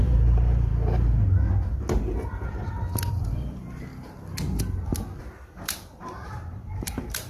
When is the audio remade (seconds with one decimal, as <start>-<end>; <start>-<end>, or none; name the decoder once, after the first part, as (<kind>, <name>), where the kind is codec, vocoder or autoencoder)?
0.0-0.7 (vocoder, BigVGAN v2); 3.1-3.9; 5.2-7.3